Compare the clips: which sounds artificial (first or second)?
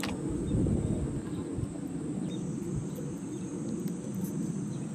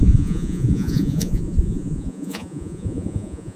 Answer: second